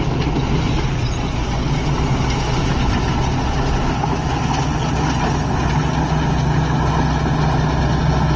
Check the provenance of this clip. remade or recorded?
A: recorded